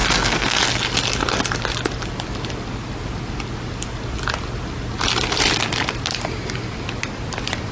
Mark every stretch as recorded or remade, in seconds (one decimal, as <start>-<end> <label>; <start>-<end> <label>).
0.0-0.6 remade; 0.6-7.7 recorded